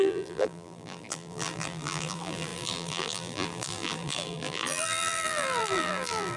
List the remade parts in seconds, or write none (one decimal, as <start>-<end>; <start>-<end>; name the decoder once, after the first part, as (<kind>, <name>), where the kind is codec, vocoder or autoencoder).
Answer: 0.0-6.4 (vocoder, BigVGAN v2)